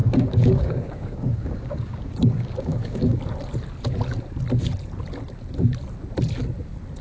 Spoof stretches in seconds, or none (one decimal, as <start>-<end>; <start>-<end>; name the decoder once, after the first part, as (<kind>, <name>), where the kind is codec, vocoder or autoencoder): 0.0-3.2 (codec, DAC)